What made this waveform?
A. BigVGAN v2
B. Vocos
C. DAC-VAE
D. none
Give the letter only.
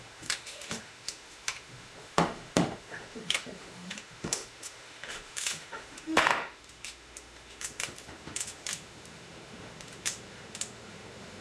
C